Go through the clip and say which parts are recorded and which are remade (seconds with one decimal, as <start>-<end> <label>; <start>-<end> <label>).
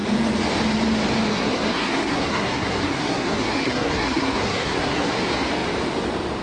0.0-1.3 recorded; 1.3-5.1 remade; 5.1-6.4 recorded